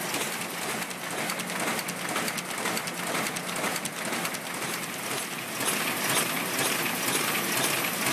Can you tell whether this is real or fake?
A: real